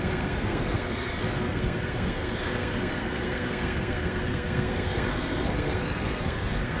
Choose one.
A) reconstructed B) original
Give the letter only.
A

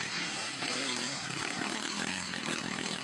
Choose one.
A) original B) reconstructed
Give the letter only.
B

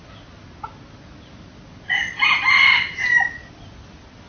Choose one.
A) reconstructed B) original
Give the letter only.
B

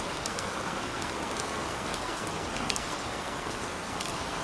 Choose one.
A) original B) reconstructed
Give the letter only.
B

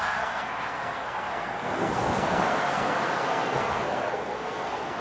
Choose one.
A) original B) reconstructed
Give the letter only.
B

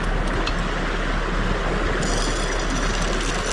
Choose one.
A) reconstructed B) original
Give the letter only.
B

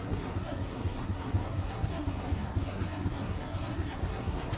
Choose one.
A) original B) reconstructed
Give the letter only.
B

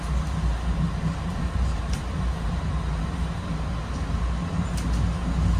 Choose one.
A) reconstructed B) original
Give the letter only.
B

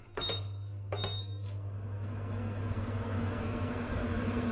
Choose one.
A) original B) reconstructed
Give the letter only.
B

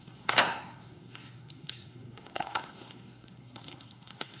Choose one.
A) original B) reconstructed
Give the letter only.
B